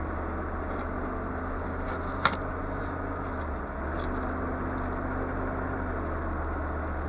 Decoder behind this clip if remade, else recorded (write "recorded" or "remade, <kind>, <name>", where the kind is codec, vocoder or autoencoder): recorded